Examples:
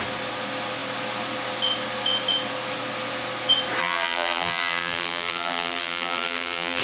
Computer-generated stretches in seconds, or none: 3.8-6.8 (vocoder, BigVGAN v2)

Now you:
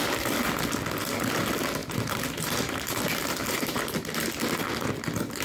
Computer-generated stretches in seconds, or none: 1.8-3.8 (vocoder, BigVGAN v2)

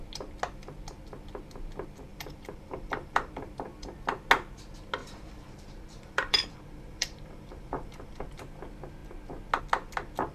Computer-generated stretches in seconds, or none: 2.1-3.3 (vocoder, BigVGAN v2); 5.0-8.4

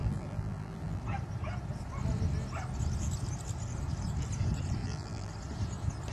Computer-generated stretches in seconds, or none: 0.0-1.0 (vocoder, BigVGAN v2); 4.8-5.3